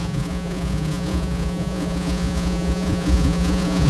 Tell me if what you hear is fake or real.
fake